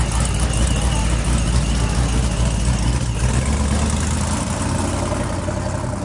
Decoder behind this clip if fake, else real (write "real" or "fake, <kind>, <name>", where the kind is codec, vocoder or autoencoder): real